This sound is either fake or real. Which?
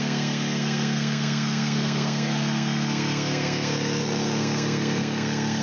fake